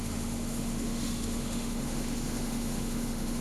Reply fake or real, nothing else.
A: fake